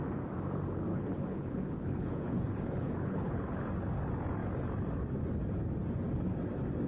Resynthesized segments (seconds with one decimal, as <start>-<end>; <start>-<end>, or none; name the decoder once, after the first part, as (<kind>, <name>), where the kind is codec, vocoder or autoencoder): 0.9-3.6 (codec, HILCodec)